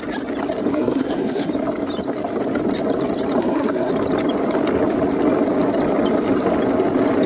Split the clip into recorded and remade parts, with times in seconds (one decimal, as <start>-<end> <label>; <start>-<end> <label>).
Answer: 0.0-0.7 recorded; 0.7-1.5 remade; 1.5-3.4 recorded; 3.4-3.9 remade; 3.9-7.3 recorded